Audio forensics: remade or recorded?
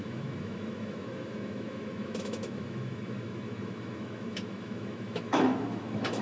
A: remade